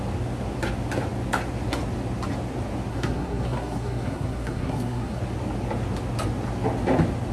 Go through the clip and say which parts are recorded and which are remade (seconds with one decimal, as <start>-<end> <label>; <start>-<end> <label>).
0.0-2.9 recorded; 2.9-5.2 remade; 5.2-7.3 recorded